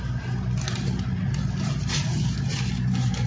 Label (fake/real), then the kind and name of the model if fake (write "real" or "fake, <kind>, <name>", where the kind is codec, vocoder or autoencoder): real